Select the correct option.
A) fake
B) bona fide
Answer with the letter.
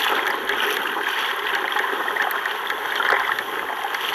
B